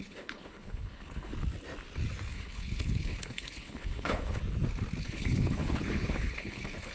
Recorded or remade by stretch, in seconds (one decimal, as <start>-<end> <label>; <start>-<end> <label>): 0.0-1.3 remade; 1.3-2.3 recorded; 2.3-4.4 remade; 4.4-5.0 recorded; 5.0-6.9 remade